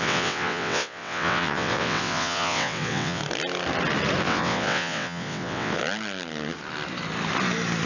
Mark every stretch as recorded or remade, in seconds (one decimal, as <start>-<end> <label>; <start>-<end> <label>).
0.0-3.2 remade; 3.2-4.2 recorded; 4.2-5.8 remade; 5.8-7.9 recorded